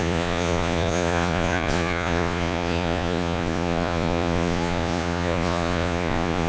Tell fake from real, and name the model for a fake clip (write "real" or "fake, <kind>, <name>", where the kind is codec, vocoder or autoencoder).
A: fake, vocoder, Vocos